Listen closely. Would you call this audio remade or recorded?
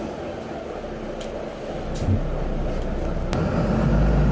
recorded